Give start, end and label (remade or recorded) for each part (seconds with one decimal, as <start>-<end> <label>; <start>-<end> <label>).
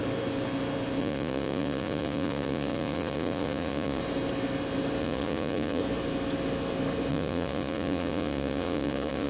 0.0-1.0 recorded; 1.0-4.0 remade; 4.0-5.0 recorded; 5.0-5.8 remade; 5.8-7.1 recorded; 7.1-9.3 remade